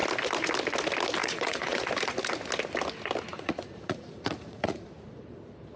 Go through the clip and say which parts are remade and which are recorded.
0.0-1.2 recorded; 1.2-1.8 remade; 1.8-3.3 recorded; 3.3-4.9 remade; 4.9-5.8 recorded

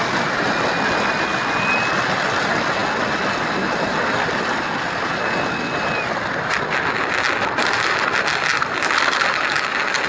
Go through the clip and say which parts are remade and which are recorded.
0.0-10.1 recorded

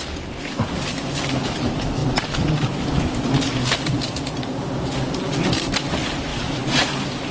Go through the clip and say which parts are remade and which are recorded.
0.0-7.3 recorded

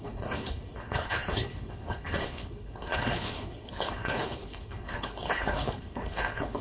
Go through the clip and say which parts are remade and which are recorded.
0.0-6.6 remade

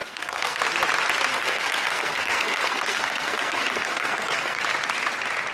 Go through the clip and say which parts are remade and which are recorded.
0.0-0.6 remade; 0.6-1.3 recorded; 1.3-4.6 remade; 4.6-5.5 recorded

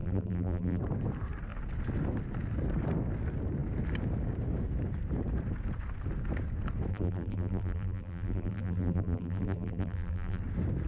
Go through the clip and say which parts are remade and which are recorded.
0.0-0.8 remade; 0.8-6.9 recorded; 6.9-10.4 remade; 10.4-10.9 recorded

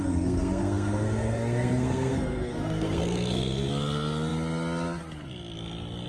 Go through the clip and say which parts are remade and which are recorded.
0.0-3.7 remade; 3.7-6.1 recorded

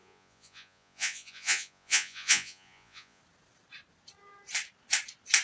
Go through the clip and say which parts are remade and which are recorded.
0.0-3.2 remade; 3.2-5.4 recorded